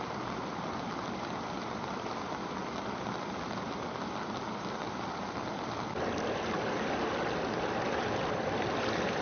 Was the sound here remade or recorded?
recorded